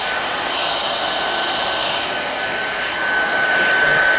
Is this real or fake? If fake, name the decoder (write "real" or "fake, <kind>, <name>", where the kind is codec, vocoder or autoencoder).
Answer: real